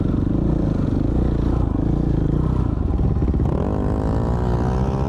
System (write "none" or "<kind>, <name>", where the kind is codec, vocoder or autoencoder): none